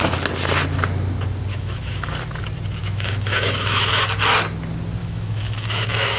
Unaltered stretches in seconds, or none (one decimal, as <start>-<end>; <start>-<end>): 0.0-1.5; 2.1-2.8; 4.0-5.0